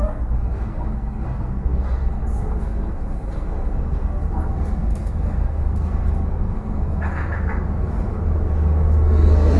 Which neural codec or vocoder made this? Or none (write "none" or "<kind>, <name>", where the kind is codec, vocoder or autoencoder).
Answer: codec, SNAC